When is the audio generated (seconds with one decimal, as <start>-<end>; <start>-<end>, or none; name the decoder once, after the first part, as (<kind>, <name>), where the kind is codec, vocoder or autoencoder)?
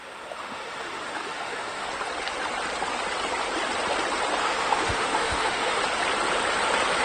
0.0-1.9 (autoencoder, DAC-VAE); 4.4-5.8